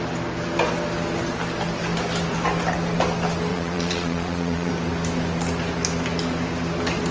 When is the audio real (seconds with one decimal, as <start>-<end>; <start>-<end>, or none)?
0.0-3.5; 4.7-7.1